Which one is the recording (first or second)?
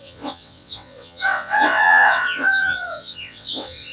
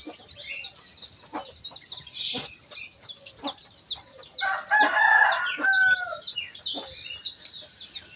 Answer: second